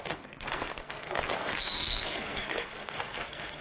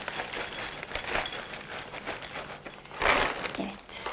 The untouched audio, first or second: second